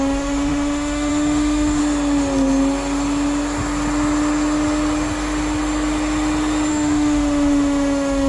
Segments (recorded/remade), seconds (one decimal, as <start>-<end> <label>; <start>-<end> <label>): 0.0-1.8 remade; 1.8-6.7 recorded; 6.7-8.3 remade